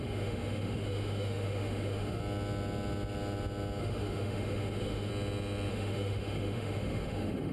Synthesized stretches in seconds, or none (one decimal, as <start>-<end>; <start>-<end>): 0.0-2.2; 3.8-5.1; 5.7-7.5